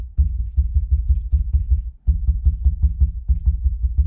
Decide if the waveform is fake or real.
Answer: real